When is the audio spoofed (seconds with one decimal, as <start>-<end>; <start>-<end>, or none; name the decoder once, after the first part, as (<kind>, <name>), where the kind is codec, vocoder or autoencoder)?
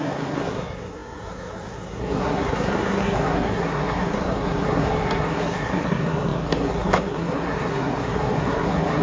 0.0-9.0 (codec, SNAC)